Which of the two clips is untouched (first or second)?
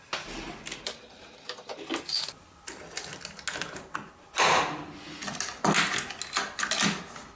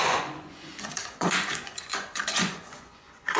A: first